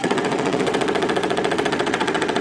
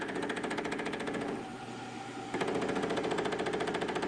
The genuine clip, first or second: second